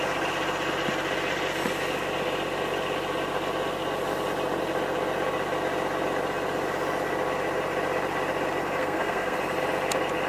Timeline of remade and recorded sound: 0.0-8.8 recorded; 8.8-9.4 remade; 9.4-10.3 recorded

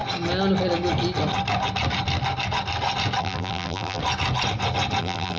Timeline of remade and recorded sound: 0.0-3.2 recorded; 3.2-4.0 remade; 4.0-5.0 recorded; 5.0-5.4 remade